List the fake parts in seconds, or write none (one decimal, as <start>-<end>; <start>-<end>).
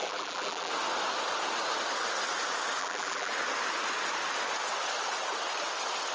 0.0-0.7; 2.8-3.3